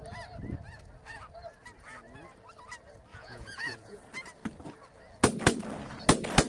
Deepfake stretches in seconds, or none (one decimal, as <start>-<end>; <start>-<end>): 3.1-4.0